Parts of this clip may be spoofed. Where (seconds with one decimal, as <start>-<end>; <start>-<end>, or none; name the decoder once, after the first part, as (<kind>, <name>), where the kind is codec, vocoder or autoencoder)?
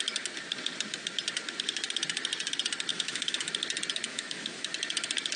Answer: 2.9-3.5 (autoencoder, DAC-VAE); 4.1-4.7